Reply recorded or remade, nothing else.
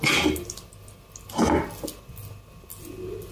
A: recorded